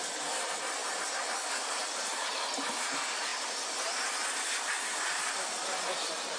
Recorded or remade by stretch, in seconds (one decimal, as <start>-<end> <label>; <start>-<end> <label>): 0.0-6.4 recorded